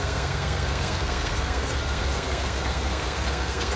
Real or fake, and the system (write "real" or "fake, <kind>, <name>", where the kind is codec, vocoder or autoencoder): fake, codec, SNAC